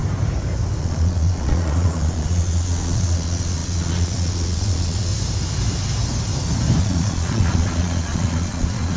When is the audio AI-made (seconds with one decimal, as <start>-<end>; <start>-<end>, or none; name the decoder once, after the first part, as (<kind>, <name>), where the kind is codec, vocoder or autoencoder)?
0.8-5.1 (vocoder, Vocos); 6.8-9.0